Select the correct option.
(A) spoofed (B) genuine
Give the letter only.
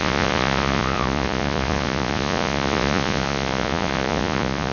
A